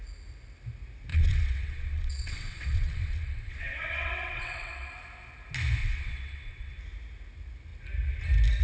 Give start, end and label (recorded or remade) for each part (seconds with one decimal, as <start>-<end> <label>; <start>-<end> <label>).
0.0-1.1 recorded; 1.1-4.9 remade; 4.9-5.8 recorded; 5.8-6.7 remade; 6.7-8.6 recorded